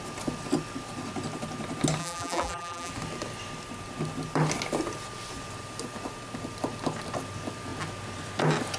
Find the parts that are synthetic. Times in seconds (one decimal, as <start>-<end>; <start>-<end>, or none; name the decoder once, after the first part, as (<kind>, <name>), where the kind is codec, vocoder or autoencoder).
2.0-2.9 (vocoder, BigVGAN v2)